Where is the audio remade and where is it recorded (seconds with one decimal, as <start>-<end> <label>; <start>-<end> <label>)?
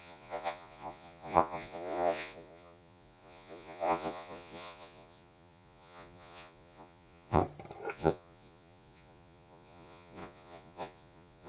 0.0-7.4 remade; 7.4-7.9 recorded; 7.9-11.5 remade